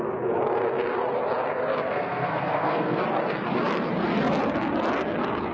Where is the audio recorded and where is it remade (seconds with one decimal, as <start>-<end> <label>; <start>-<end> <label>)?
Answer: 0.0-1.8 recorded; 1.8-3.0 remade; 3.0-5.5 recorded